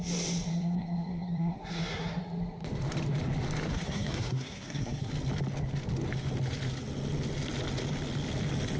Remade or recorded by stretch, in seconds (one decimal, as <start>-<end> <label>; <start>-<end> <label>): 0.0-0.5 recorded; 0.5-2.2 remade; 2.2-3.7 recorded; 3.7-5.1 remade; 5.1-8.8 recorded